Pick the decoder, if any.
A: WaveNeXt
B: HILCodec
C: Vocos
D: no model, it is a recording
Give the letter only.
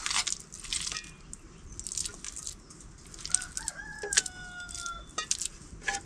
D